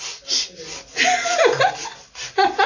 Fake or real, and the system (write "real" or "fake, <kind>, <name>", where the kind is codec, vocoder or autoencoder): real